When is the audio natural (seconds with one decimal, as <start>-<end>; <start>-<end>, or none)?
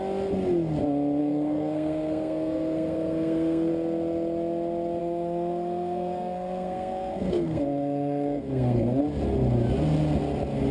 0.0-1.2; 3.7-5.0; 9.0-10.7